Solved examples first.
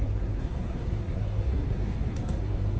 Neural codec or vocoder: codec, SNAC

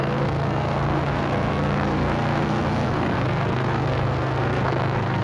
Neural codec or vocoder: codec, SNAC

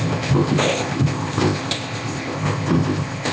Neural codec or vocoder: codec, ZipCodec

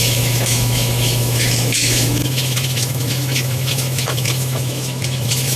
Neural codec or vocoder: autoencoder, DAC-VAE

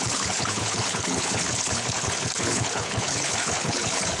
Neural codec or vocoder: codec, HILCodec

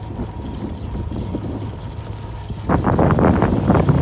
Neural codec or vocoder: none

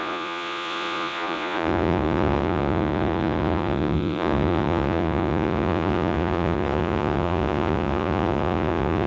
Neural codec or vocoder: vocoder, Vocos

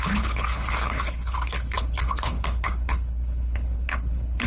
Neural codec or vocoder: codec, HILCodec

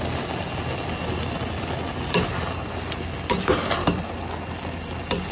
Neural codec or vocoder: none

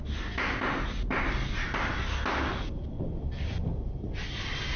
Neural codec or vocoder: none